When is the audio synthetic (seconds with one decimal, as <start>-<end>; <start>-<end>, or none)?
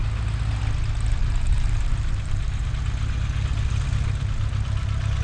1.2-2.7